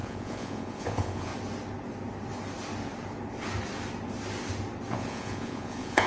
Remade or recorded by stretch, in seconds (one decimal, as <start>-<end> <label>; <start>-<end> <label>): 0.0-1.3 remade; 1.3-4.9 recorded; 4.9-6.1 remade

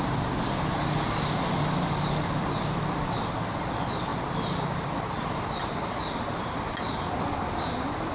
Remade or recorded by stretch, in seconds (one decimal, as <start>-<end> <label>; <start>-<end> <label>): 0.0-8.1 recorded

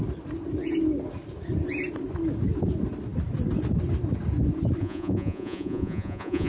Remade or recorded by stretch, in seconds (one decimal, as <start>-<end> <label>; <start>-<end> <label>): 0.0-4.8 recorded; 4.8-6.5 remade